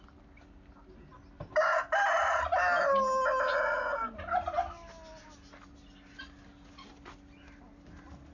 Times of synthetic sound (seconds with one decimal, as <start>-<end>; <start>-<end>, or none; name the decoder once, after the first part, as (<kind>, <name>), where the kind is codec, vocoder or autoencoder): none